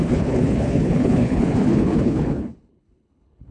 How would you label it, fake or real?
fake